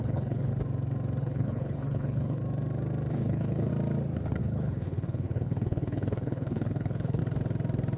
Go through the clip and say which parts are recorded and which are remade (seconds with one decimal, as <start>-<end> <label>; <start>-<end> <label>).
0.0-0.5 remade; 0.5-1.2 recorded; 1.2-2.4 remade; 2.4-3.1 recorded; 3.1-3.7 remade; 3.7-4.4 recorded; 4.4-7.2 remade; 7.2-8.0 recorded

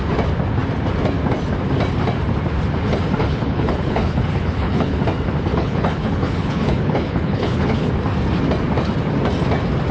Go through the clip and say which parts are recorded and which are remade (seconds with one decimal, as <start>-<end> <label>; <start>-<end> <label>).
0.0-3.2 recorded; 3.2-5.0 remade; 5.0-5.5 recorded; 5.5-7.9 remade; 7.9-9.9 recorded

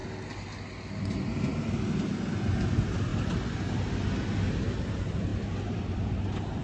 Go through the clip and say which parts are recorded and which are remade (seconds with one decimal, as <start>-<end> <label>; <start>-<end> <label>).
0.0-6.6 recorded

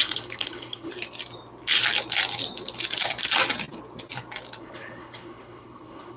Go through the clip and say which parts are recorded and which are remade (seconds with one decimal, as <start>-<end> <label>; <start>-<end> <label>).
0.0-0.9 remade; 0.9-4.6 recorded; 4.6-6.2 remade

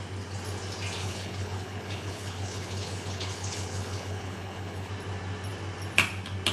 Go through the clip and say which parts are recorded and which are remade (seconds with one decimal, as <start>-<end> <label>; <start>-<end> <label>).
0.0-1.0 recorded; 1.0-4.9 remade; 4.9-6.5 recorded

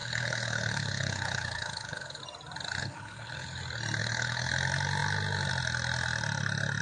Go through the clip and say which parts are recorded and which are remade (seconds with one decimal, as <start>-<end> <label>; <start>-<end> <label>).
0.0-2.2 remade; 2.2-2.8 recorded; 2.8-3.6 remade; 3.6-4.0 recorded; 4.0-4.5 remade; 4.5-6.8 recorded

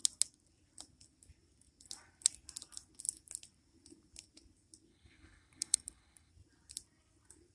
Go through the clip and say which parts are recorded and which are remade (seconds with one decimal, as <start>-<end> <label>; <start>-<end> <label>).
0.0-4.9 recorded; 4.9-6.3 remade; 6.3-7.5 recorded